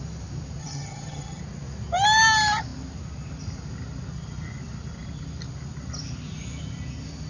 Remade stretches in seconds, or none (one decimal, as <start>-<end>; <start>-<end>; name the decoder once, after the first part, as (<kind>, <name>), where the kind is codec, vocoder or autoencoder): 0.6-1.4 (vocoder, HiFi-GAN)